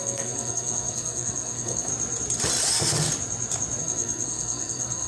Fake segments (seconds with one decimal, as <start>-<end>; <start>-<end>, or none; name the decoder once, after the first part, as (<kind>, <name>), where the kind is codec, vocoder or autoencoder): 0.0-1.9 (codec, SNAC); 3.8-5.1